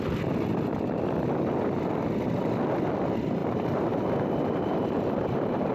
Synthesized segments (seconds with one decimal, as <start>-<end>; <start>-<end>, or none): 3.4-5.7